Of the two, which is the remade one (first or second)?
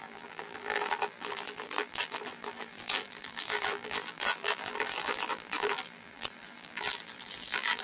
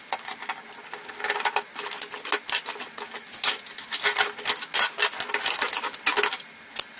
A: first